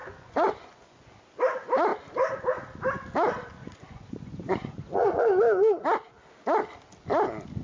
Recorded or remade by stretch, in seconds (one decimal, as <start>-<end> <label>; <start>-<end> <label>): 0.0-1.2 remade; 1.2-3.6 recorded; 3.6-5.6 remade; 5.6-7.6 recorded